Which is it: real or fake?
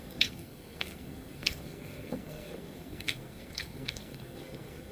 fake